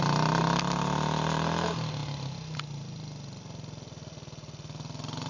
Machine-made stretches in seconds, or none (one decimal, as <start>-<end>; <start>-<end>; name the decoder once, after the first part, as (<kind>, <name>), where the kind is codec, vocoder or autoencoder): none